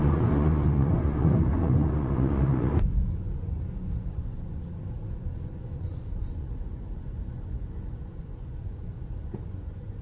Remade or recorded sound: remade